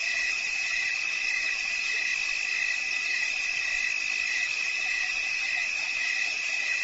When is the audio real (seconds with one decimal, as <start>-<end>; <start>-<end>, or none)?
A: 2.1-2.8; 3.7-4.3